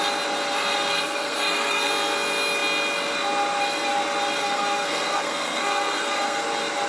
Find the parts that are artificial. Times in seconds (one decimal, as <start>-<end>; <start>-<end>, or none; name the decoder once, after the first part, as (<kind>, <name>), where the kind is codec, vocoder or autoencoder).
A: 0.9-1.9 (codec, SNAC); 4.4-6.4